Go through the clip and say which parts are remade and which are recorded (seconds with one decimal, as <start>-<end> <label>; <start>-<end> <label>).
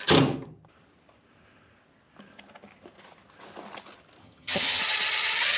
0.0-4.2 recorded; 4.2-4.8 remade; 4.8-5.6 recorded